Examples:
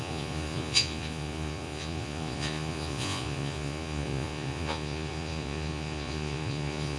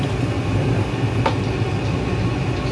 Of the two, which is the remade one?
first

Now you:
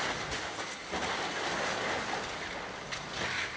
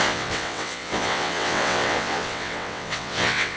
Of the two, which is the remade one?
second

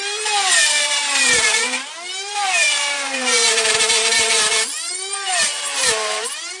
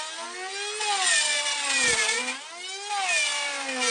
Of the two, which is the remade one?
first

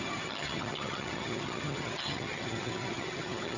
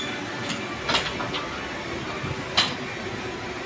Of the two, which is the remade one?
first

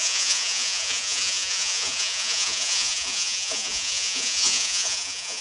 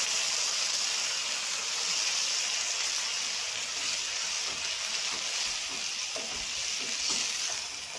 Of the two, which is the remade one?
first